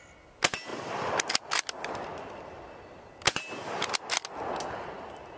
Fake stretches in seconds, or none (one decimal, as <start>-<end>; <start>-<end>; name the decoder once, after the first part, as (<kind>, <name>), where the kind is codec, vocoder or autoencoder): none